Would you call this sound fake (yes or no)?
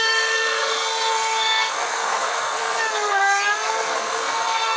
yes